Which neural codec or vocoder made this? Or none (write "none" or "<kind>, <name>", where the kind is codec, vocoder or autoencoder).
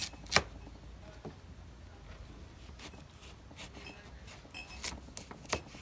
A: none